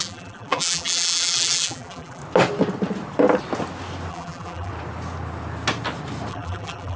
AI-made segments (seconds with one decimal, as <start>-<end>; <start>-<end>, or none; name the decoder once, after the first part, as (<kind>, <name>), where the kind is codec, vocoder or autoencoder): 0.0-2.2 (vocoder, BigVGAN v2); 4.1-4.7; 6.3-7.0

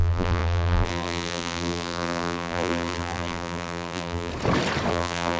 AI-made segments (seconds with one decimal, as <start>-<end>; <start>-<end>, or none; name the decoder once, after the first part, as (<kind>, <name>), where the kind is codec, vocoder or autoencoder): 0.0-4.3 (vocoder, BigVGAN v2); 4.9-5.4

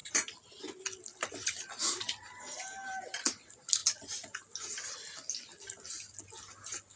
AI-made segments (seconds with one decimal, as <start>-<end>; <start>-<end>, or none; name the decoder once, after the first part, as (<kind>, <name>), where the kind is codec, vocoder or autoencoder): 0.0-2.0 (vocoder, BigVGAN v2)

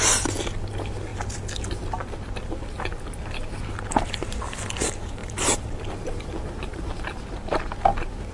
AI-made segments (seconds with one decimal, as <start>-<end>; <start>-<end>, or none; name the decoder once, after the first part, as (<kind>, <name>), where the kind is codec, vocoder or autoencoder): 5.2-6.9 (vocoder, BigVGAN v2)

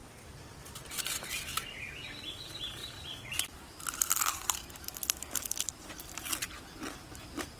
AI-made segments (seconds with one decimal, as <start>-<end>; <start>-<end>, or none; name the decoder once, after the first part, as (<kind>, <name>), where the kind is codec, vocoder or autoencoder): 1.0-7.6 (vocoder, BigVGAN v2)

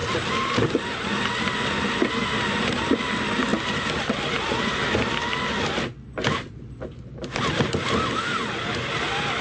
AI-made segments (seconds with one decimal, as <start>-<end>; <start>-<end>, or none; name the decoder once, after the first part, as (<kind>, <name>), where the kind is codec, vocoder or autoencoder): none